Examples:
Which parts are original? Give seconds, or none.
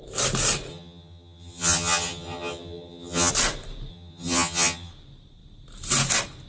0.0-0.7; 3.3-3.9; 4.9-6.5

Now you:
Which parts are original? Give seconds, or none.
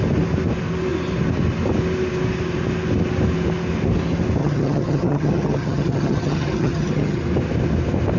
0.0-4.4; 7.2-8.2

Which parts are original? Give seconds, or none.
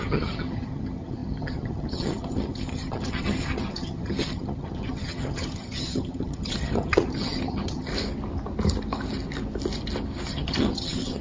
7.9-10.3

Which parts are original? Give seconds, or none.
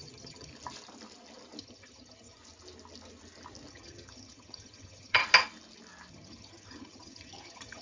0.5-1.6; 2.4-3.7; 5.2-6.1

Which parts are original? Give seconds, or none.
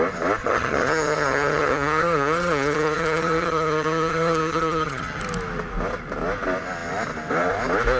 0.0-0.4; 5.2-8.0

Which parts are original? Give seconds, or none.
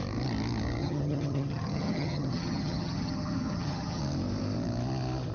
0.0-0.8; 4.0-5.3